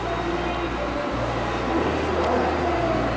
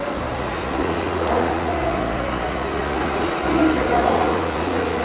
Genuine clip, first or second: first